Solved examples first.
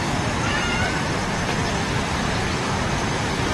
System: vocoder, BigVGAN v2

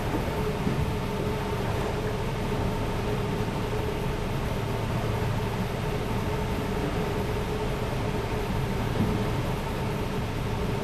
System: none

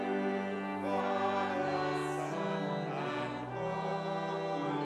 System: none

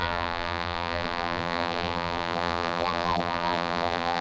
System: vocoder, BigVGAN v2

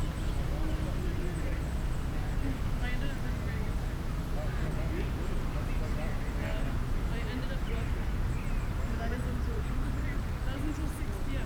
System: none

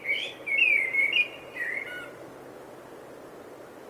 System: none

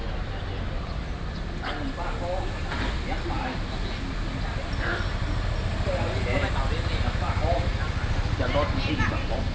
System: none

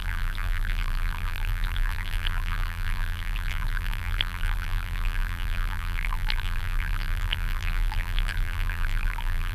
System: vocoder, BigVGAN v2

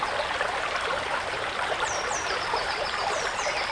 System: vocoder, BigVGAN v2